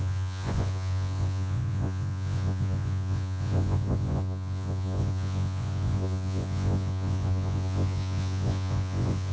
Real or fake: fake